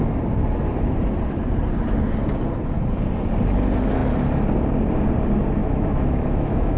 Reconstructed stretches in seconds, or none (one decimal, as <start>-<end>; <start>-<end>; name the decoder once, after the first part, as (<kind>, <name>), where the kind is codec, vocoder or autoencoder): 5.6-6.8 (autoencoder, DAC-VAE)